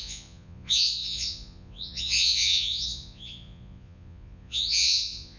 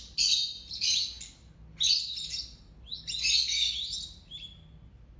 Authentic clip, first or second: second